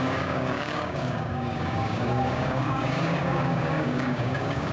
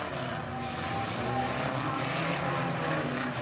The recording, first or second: second